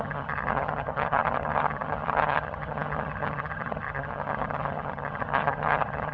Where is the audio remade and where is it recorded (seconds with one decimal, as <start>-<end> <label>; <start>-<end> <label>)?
0.0-6.1 remade